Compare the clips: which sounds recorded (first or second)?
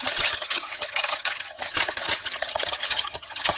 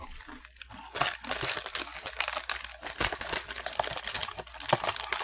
second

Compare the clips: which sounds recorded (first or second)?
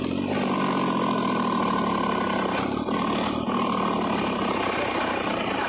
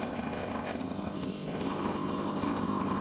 first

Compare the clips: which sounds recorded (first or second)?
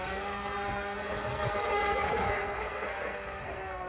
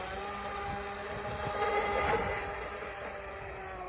second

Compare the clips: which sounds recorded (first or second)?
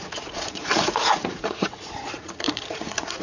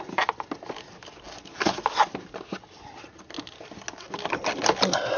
second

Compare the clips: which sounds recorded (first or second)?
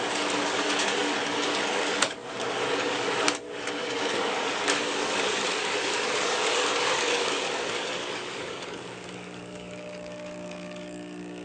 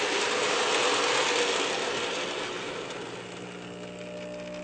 second